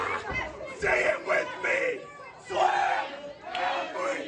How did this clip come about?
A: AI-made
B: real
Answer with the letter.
B